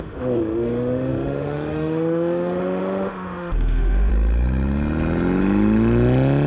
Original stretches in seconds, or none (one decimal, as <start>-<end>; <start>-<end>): 4.1-6.5